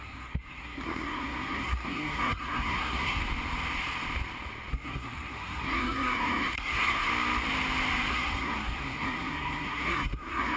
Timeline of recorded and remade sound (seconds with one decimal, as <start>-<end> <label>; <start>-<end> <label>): 0.0-3.2 remade; 3.2-4.7 recorded; 4.7-7.1 remade; 7.1-8.1 recorded; 8.1-10.6 remade